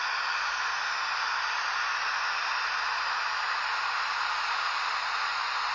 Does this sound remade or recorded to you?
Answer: recorded